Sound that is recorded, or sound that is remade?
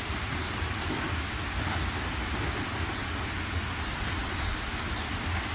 recorded